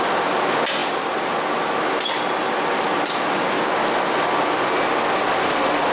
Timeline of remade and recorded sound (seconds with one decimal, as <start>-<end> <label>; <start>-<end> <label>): 0.0-5.9 recorded